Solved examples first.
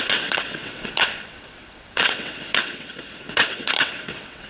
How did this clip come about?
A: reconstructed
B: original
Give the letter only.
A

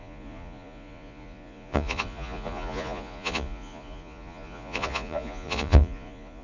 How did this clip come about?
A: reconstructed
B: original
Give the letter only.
A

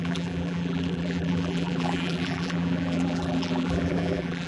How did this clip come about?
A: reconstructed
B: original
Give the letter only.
A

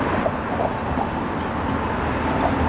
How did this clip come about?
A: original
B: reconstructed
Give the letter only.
A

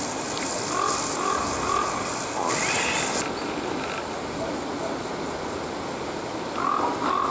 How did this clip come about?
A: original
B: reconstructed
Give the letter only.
A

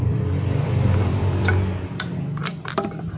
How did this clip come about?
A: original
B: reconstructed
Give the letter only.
B